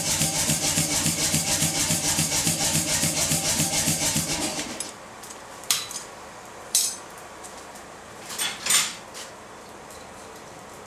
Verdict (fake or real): fake